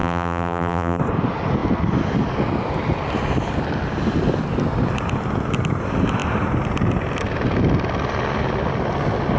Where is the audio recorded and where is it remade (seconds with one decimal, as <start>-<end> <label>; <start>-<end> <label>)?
0.0-1.0 remade; 1.0-9.4 recorded